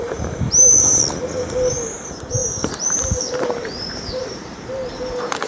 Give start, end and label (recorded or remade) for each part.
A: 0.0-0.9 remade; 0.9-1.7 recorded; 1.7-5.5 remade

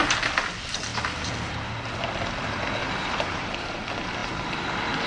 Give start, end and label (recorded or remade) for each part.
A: 0.0-0.9 recorded; 0.9-1.6 remade; 1.6-2.8 recorded; 2.8-3.8 remade; 3.8-5.1 recorded